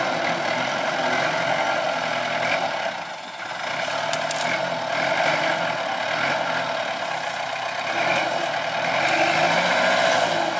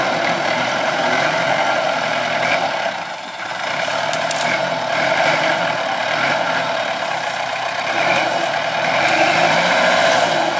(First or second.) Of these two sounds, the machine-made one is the second